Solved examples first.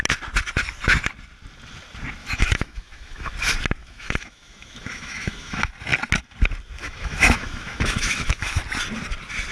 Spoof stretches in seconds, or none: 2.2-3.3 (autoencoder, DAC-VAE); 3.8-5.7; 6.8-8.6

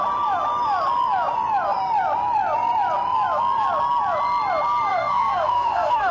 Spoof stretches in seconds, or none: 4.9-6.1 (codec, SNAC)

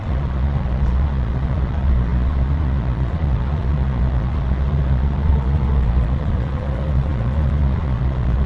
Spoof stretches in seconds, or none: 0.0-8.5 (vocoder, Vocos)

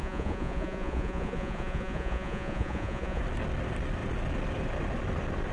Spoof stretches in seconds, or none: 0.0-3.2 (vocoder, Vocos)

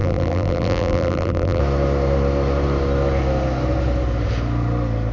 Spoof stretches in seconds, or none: 0.0-1.6 (vocoder, BigVGAN v2)

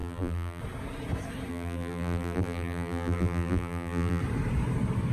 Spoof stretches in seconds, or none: 0.0-0.6 (vocoder, BigVGAN v2); 1.5-4.2

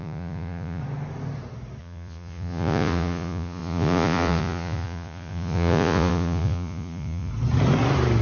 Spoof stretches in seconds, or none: 0.0-0.8 (vocoder, Vocos); 1.8-7.3